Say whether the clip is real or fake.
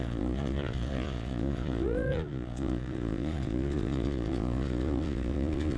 fake